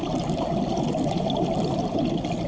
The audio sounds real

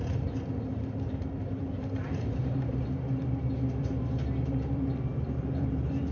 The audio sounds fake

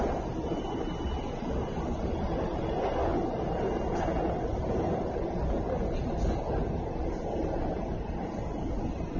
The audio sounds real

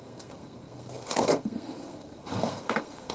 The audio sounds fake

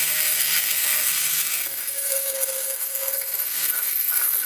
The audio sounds fake